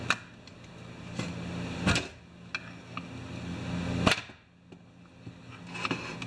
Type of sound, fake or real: real